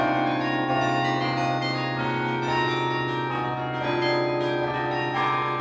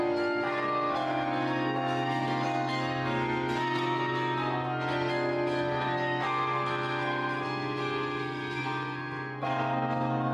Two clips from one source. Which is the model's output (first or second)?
second